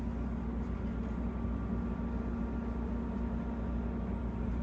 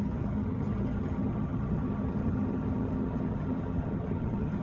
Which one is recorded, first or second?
first